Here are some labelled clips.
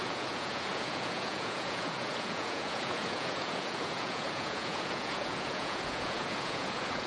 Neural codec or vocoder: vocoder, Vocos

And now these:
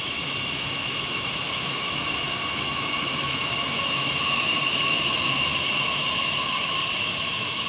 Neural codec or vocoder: autoencoder, DAC-VAE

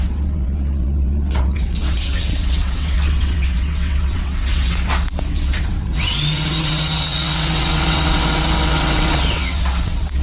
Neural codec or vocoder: vocoder, WaveNeXt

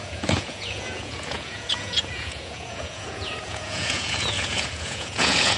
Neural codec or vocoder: vocoder, Vocos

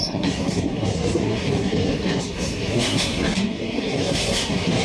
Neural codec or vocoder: codec, SNAC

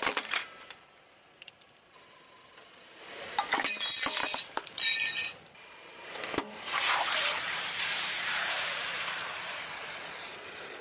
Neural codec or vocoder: vocoder, BigVGAN v2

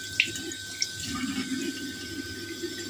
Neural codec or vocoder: none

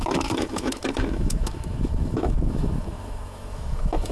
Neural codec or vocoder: autoencoder, DAC-VAE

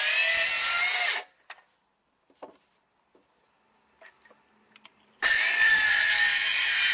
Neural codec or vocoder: none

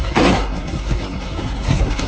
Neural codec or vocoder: codec, SNAC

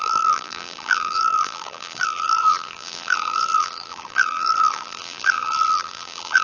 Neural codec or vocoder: vocoder, BigVGAN v2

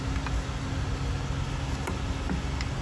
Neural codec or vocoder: none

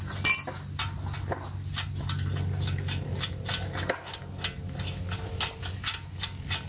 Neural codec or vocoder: none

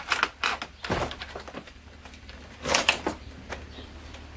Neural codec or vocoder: none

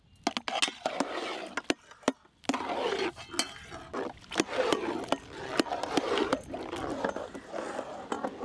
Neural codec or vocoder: none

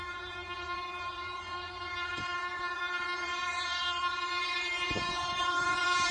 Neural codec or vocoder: vocoder, Vocos